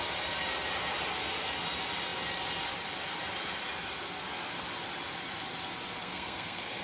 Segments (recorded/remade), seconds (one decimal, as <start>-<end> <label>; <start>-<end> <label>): 0.0-6.0 recorded; 6.0-6.8 remade